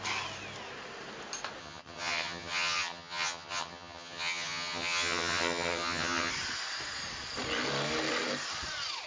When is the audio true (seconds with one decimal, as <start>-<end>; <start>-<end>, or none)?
0.0-1.6; 6.3-9.1